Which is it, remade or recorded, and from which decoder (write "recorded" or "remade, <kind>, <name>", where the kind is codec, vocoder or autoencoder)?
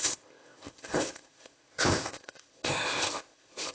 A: remade, codec, ZipCodec